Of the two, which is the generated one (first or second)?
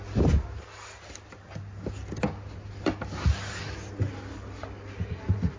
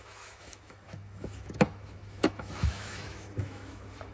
second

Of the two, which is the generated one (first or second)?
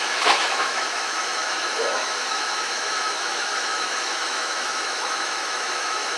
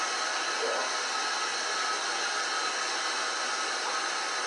first